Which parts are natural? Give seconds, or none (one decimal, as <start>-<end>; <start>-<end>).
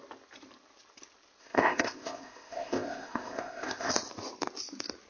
0.0-1.4; 3.9-5.1